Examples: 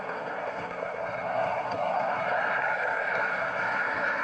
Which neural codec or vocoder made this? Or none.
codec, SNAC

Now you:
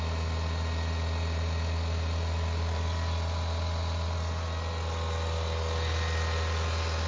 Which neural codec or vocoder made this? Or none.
none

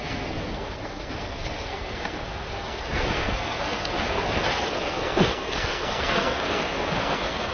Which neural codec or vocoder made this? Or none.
codec, SNAC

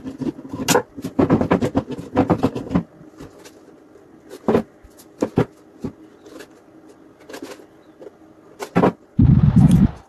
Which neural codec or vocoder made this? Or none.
none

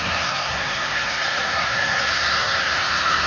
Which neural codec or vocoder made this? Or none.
codec, SNAC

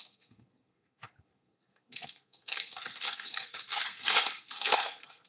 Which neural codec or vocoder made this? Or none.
codec, SNAC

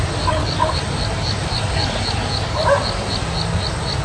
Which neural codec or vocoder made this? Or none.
none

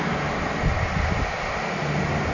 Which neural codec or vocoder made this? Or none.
none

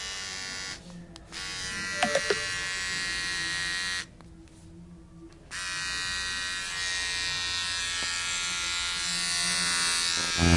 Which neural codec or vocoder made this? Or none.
none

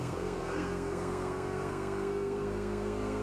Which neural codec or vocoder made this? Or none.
codec, SNAC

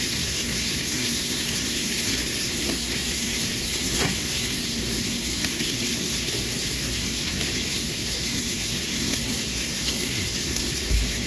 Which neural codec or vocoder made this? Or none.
codec, SNAC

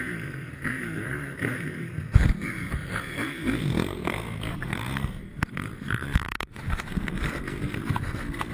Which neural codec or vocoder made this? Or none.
codec, SNAC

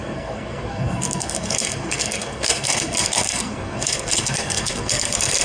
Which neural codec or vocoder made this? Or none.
codec, SNAC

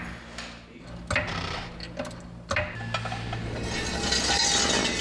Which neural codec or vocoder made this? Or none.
none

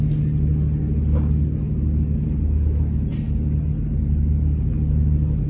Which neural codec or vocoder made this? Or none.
none